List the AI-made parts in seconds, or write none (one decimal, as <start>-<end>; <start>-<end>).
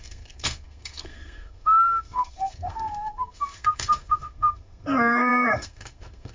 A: 0.0-6.3